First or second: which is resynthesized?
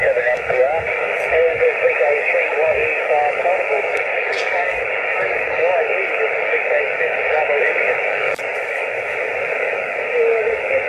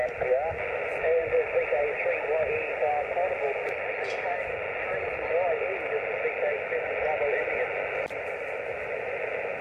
first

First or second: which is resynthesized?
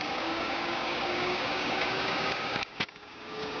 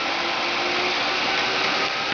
first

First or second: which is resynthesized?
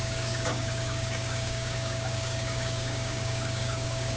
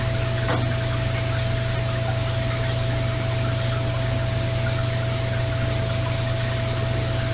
first